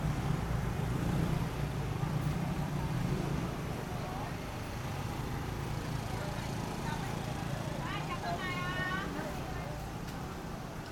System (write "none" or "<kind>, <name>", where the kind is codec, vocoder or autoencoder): vocoder, BigVGAN v2